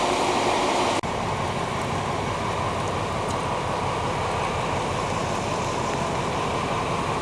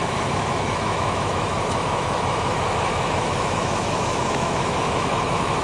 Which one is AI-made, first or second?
second